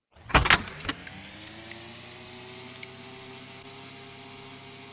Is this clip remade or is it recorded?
recorded